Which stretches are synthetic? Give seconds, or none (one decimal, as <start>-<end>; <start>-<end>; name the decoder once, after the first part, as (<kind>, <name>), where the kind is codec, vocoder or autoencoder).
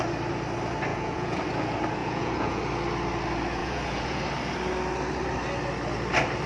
0.9-1.4 (vocoder, Vocos); 2.0-2.6; 3.6-4.2